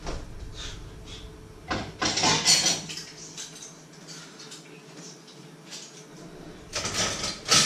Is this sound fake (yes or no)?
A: no